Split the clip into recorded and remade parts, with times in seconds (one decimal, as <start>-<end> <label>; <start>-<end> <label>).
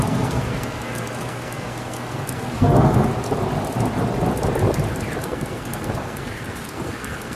0.0-3.1 remade; 3.1-5.2 recorded; 5.2-7.4 remade